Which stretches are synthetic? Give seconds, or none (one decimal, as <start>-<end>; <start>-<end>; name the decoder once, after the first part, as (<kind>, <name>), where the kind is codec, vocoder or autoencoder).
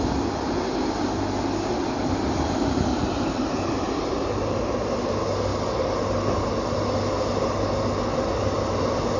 2.9-4.6 (vocoder, BigVGAN v2)